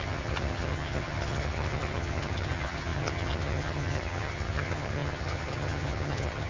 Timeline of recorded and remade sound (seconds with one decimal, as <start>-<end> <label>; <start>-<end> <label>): 0.0-6.5 remade